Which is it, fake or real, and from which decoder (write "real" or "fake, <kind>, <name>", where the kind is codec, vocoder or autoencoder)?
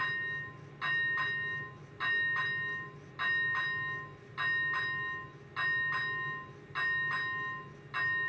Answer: real